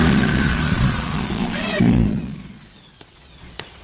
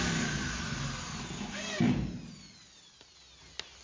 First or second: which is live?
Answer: second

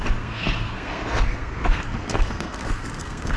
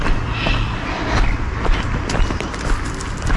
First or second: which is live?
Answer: second